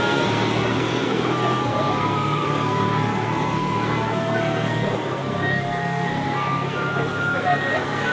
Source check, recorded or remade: remade